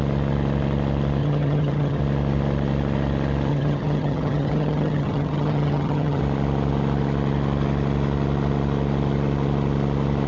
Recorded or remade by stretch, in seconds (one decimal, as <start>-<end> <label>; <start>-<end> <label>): 0.0-1.2 recorded; 1.2-2.0 remade; 2.0-3.5 recorded; 3.5-6.2 remade; 6.2-10.3 recorded